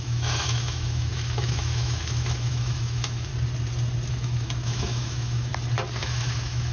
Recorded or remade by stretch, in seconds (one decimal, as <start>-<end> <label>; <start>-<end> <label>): 0.0-3.3 remade; 3.3-4.1 recorded; 4.1-5.5 remade; 5.5-6.0 recorded; 6.0-6.7 remade